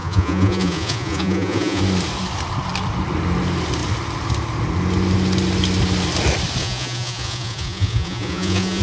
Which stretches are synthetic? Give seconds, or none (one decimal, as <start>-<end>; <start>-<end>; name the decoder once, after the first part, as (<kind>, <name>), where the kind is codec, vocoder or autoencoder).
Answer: 0.0-1.8 (vocoder, Vocos); 6.6-8.8